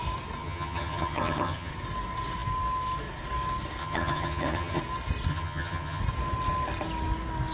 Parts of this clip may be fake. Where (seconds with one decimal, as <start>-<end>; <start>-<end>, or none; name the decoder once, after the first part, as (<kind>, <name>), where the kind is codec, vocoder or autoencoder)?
0.4-1.7 (vocoder, HiFi-GAN); 3.8-4.8; 5.3-6.0